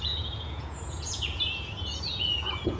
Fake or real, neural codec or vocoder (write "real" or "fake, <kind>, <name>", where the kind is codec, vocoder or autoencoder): fake, vocoder, Vocos